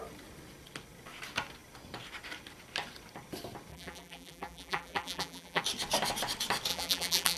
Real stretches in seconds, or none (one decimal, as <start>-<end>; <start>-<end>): 0.0-3.7; 5.6-6.7